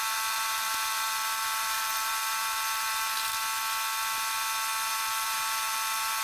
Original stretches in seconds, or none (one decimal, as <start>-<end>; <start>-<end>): 3.3-4.9